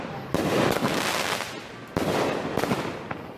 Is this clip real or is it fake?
real